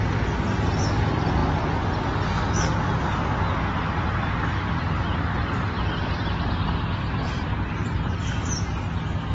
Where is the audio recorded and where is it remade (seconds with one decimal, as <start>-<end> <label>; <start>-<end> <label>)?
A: 0.0-9.3 recorded